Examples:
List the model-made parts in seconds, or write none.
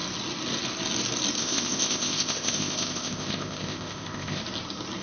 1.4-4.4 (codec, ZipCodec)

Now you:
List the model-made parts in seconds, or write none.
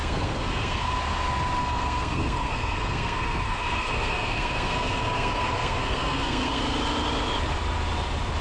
0.0-1.0 (codec, SNAC); 1.6-6.6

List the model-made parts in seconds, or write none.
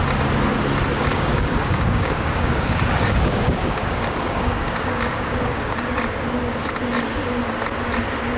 1.1-6.0 (codec, DAC)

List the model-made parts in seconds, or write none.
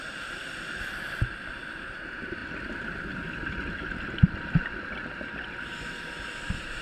none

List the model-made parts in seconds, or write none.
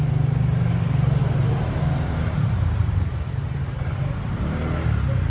1.2-4.4 (vocoder, BigVGAN v2)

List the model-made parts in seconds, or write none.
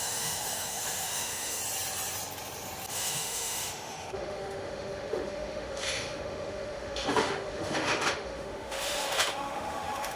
0.0-1.6 (autoencoder, DAC-VAE); 2.9-10.2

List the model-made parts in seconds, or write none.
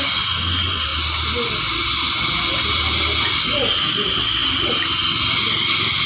none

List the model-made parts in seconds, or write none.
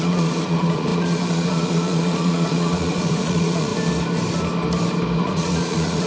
0.0-3.7 (vocoder, Vocos); 5.2-6.1